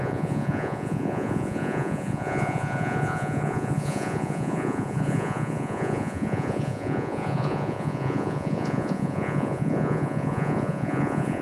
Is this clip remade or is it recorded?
remade